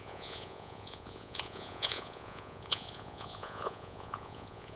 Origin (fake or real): fake